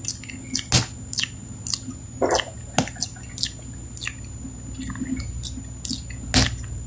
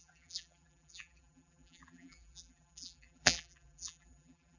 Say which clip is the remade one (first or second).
second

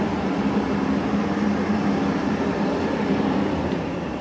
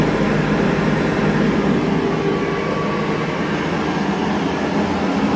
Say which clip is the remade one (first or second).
first